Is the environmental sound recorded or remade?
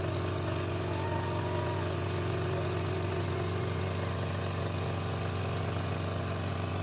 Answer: remade